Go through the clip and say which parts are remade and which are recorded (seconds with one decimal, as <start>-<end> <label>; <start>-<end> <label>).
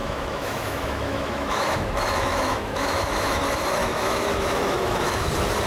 0.0-3.4 remade; 3.4-3.8 recorded; 3.8-5.3 remade; 5.3-5.7 recorded